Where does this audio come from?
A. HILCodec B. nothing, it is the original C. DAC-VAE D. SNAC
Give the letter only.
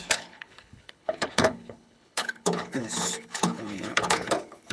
A